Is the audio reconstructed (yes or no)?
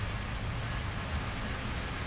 no